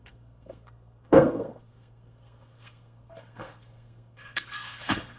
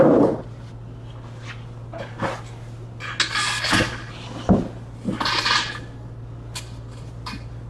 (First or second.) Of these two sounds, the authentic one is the second